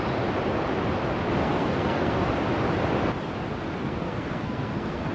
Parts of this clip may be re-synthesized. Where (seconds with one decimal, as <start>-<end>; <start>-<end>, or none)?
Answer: 1.4-2.3; 3.8-5.1